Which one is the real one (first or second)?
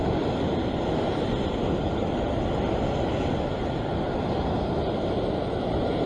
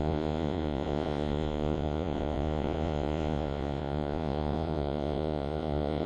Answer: first